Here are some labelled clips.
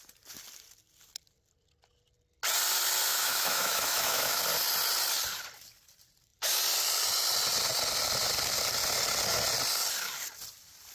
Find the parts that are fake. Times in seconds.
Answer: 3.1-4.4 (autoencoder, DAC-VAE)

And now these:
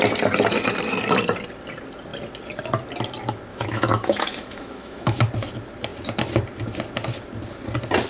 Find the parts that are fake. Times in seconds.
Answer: 3.5-5.3 (autoencoder, DAC-VAE)